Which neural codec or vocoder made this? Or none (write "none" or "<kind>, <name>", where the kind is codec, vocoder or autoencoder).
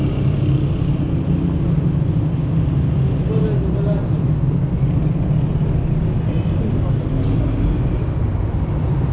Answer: none